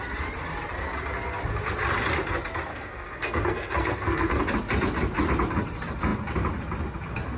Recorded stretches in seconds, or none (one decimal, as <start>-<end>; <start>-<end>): 0.0-2.7; 4.4-7.4